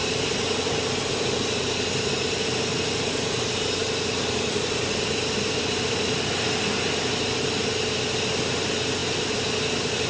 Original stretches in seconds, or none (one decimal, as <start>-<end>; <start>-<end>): 2.1-3.8; 6.3-10.1